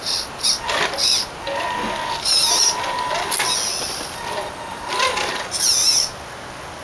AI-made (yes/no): no